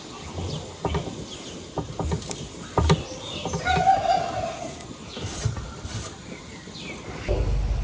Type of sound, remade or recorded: recorded